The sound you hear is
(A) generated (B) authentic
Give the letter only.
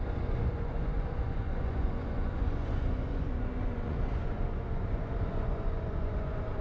A